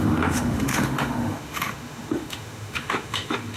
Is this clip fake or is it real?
fake